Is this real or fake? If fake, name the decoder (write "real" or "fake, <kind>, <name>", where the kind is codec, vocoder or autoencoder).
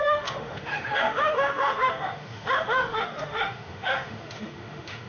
fake, autoencoder, DAC-VAE